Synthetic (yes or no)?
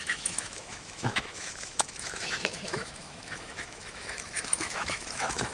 yes